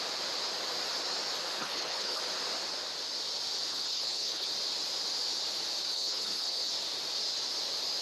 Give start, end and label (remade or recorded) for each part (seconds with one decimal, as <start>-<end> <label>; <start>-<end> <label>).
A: 0.0-1.6 recorded; 1.6-2.2 remade; 2.2-3.7 recorded; 3.7-4.5 remade; 4.5-5.9 recorded; 5.9-6.7 remade; 6.7-8.0 recorded